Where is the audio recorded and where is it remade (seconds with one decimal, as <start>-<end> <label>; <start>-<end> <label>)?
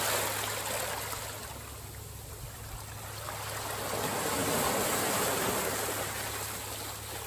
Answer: 0.0-7.3 recorded